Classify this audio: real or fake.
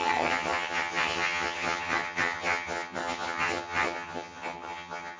fake